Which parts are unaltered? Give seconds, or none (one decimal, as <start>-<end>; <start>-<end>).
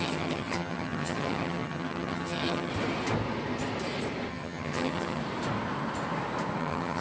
2.7-4.3; 5.2-6.6